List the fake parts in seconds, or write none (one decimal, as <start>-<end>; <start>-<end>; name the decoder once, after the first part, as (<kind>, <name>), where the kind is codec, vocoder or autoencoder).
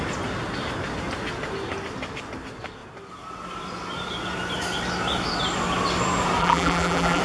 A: 6.4-7.2 (vocoder, BigVGAN v2)